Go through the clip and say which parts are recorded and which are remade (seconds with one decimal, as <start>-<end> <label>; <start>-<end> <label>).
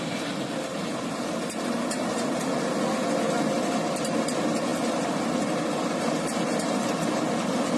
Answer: 0.0-4.7 recorded; 4.7-7.8 remade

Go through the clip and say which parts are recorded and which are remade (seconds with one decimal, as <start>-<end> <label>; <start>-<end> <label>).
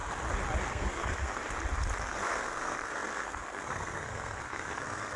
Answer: 0.0-0.7 recorded; 0.7-1.4 remade; 1.4-2.1 recorded; 2.1-5.2 remade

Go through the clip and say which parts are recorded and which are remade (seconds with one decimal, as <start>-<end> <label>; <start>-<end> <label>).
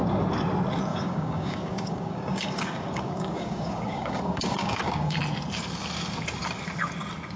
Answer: 0.0-0.9 recorded; 0.9-5.2 remade; 5.2-7.4 recorded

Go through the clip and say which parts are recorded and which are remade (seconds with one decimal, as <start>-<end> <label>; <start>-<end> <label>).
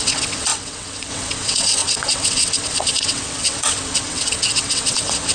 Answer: 0.0-5.3 remade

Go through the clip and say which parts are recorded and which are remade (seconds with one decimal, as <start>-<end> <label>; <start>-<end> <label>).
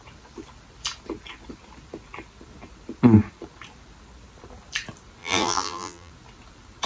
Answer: 0.0-5.2 recorded; 5.2-6.1 remade; 6.1-6.9 recorded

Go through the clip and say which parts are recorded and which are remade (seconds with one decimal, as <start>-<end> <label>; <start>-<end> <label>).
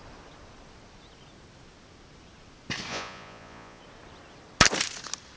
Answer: 0.0-2.9 recorded; 2.9-3.8 remade; 3.8-5.4 recorded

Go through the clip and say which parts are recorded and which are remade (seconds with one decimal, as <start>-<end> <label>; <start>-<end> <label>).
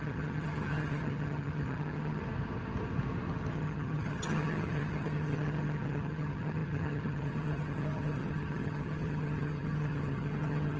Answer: 0.0-2.2 remade; 2.2-3.5 recorded; 3.5-10.8 remade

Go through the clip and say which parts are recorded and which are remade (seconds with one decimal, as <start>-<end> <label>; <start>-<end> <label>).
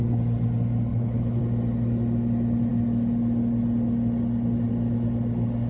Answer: 0.0-0.9 recorded; 0.9-1.4 remade; 1.4-5.7 recorded